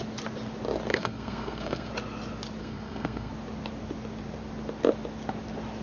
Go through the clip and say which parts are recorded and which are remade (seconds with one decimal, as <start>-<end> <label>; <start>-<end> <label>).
0.0-0.9 recorded; 0.9-1.9 remade; 1.9-2.6 recorded; 2.6-3.3 remade; 3.3-5.8 recorded